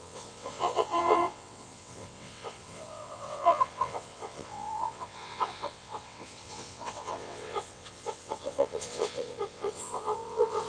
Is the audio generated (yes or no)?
yes